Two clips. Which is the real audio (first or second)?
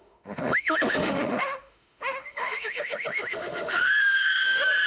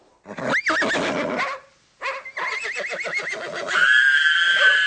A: second